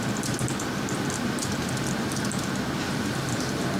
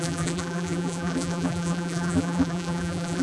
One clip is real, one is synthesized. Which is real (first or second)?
first